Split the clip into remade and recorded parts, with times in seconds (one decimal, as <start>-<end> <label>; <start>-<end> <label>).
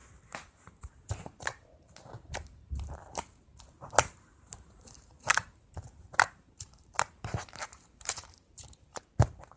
0.0-9.6 remade